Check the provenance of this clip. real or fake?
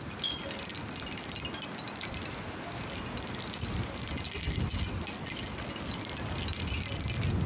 real